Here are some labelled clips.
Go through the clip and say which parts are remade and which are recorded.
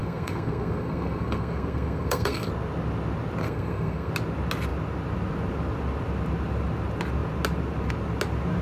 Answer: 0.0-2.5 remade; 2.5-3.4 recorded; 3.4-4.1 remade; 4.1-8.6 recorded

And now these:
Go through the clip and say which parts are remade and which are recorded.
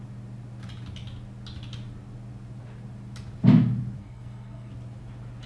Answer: 0.0-4.0 recorded; 4.0-4.7 remade; 4.7-5.5 recorded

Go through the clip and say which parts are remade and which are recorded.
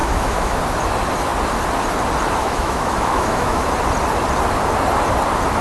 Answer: 0.0-0.6 remade; 0.6-2.4 recorded; 2.4-3.7 remade; 3.7-5.6 recorded